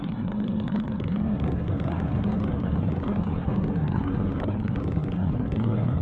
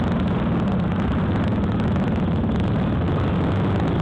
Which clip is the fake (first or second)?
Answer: first